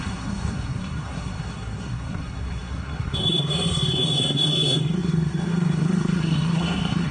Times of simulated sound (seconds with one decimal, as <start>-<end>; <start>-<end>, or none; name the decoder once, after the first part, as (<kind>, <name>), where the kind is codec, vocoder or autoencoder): 0.0-7.1 (codec, SNAC)